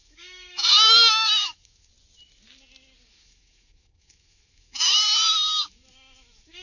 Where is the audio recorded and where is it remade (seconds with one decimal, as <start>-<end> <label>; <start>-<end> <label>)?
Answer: 0.0-1.9 remade; 1.9-3.1 recorded; 3.1-6.6 remade